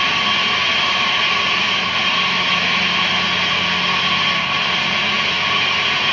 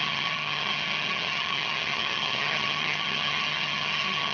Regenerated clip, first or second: second